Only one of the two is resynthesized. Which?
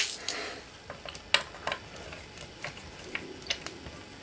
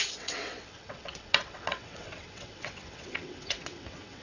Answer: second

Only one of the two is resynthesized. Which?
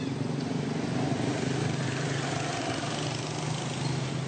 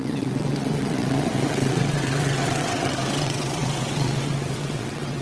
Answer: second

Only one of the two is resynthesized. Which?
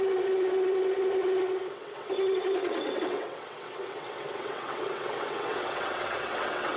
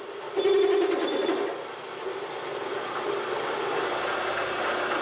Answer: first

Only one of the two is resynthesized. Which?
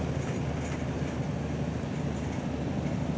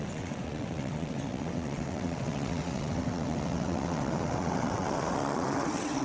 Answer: second